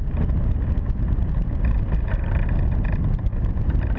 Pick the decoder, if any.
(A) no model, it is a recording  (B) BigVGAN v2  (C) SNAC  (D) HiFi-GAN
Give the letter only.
A